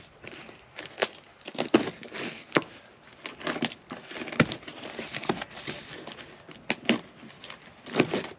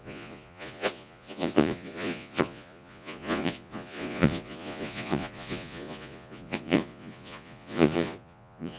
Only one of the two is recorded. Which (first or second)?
first